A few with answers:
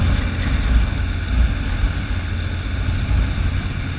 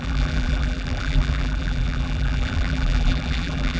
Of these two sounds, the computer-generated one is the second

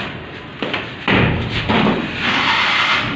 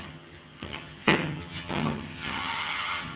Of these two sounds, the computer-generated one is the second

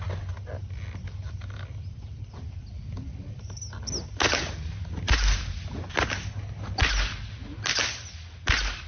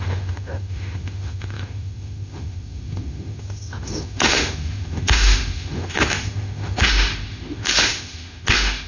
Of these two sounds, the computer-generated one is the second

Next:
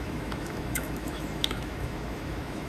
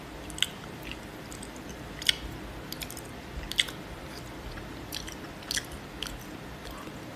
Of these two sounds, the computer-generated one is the first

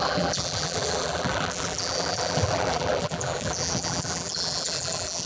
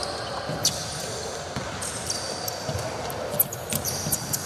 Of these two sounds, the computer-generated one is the first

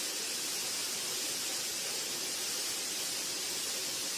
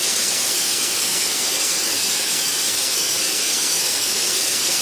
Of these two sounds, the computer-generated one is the second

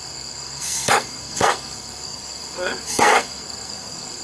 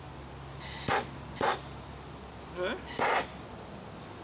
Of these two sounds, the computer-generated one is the first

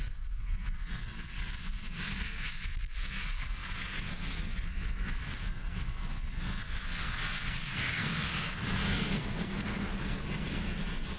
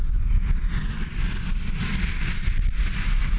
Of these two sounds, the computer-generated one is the first